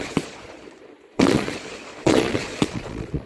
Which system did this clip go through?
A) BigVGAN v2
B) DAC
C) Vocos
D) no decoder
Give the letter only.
C